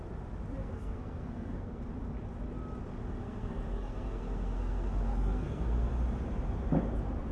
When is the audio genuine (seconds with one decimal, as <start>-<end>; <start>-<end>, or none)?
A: 0.0-0.6; 1.8-3.2; 5.9-7.3